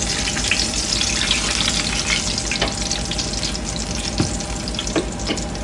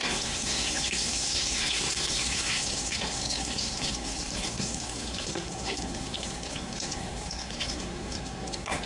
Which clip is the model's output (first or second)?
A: second